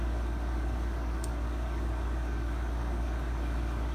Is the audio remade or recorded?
remade